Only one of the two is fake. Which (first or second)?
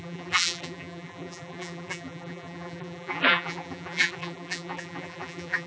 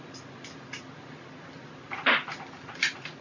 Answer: first